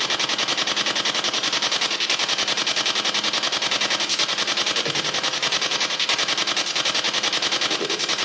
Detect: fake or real real